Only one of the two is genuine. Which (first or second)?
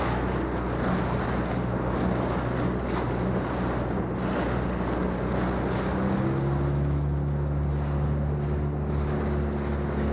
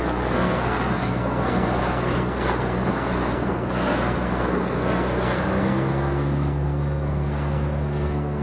first